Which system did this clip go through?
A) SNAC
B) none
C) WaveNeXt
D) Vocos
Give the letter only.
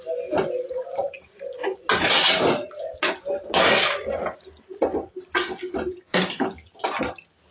B